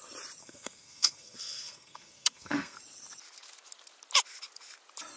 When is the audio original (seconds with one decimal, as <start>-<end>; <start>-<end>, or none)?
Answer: 0.0-0.4; 2.8-5.2